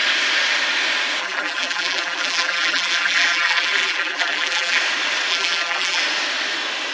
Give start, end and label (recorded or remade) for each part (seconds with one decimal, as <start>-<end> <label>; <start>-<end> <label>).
0.0-1.2 recorded; 1.2-4.8 remade; 4.8-5.3 recorded; 5.3-6.0 remade; 6.0-6.9 recorded